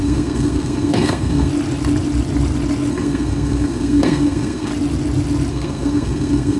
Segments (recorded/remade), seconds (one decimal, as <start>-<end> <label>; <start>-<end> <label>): 0.0-1.5 remade; 1.5-2.9 recorded; 2.9-4.7 remade; 4.7-5.5 recorded; 5.5-6.6 remade